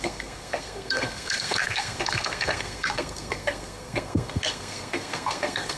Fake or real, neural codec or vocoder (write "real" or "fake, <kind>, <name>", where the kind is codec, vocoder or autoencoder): fake, codec, SNAC